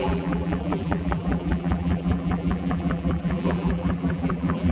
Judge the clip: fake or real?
fake